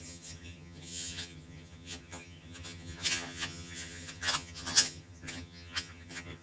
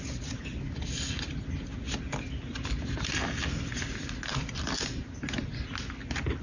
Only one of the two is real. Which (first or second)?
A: second